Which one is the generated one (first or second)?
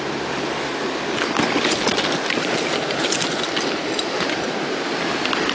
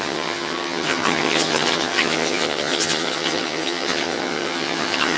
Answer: second